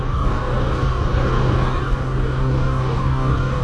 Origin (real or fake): fake